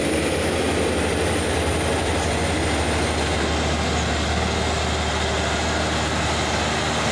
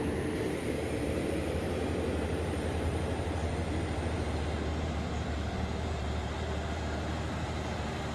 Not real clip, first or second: second